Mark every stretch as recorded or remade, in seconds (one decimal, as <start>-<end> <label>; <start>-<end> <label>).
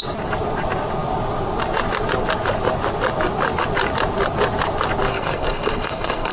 0.0-5.1 recorded; 5.1-6.3 remade